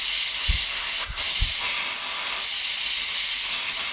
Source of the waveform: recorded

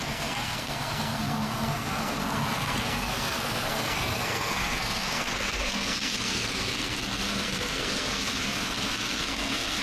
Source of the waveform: remade